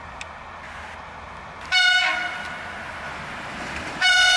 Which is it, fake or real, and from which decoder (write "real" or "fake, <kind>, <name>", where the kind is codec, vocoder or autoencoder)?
real